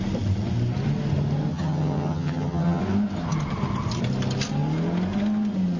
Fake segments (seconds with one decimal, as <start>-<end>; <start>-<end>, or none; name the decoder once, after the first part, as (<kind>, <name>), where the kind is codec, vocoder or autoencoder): 1.5-2.8 (vocoder, HiFi-GAN)